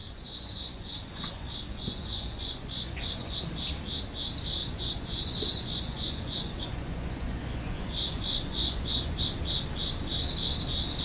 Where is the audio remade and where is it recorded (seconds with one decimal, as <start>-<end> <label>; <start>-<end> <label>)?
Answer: 0.0-3.4 remade; 3.4-4.6 recorded; 4.6-9.2 remade; 9.2-11.0 recorded